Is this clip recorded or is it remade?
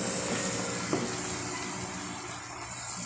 recorded